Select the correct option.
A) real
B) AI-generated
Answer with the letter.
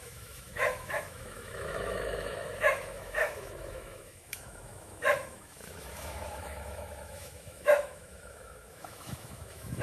B